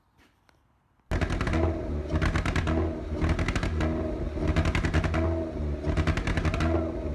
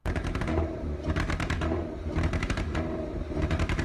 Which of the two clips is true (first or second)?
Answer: first